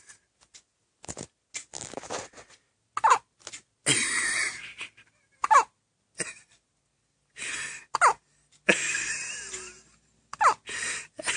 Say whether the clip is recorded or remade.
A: recorded